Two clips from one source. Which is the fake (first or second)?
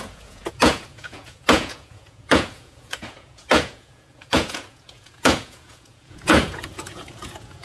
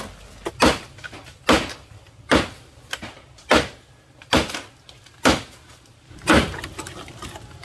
first